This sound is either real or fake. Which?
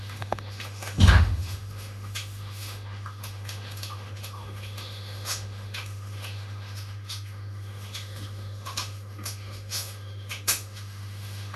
fake